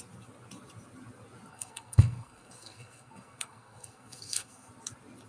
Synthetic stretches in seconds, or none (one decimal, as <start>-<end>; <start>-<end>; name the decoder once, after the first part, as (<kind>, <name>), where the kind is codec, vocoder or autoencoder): 1.5-4.7 (codec, SNAC)